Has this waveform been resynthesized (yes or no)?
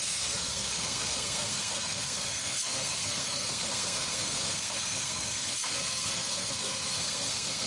yes